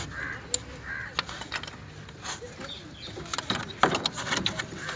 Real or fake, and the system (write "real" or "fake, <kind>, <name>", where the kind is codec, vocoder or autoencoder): real